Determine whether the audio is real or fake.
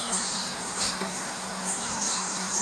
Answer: fake